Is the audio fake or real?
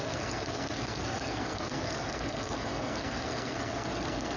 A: fake